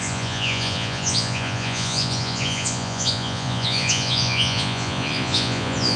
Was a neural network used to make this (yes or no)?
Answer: yes